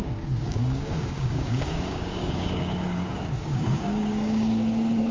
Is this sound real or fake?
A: fake